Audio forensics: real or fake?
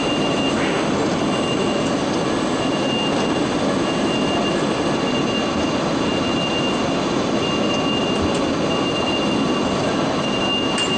real